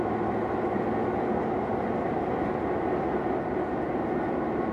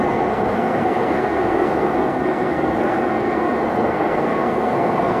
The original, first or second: first